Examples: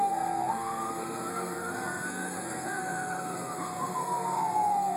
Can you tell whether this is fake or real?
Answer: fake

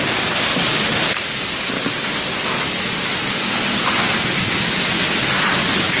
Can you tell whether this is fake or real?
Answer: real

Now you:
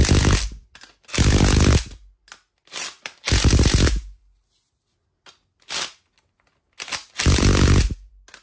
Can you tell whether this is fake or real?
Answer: real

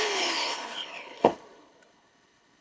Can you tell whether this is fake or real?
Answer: fake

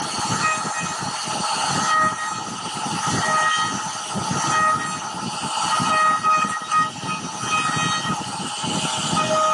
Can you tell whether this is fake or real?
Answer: real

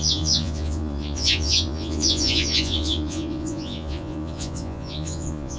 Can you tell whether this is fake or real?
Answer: fake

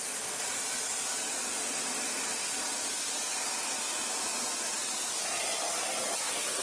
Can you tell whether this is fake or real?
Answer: real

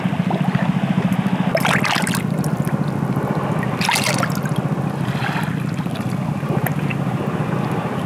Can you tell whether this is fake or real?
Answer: real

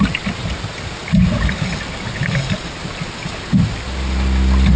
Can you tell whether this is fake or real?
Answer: real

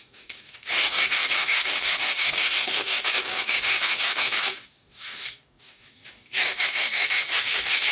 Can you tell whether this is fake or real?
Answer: fake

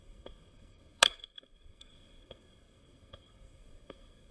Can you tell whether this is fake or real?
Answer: fake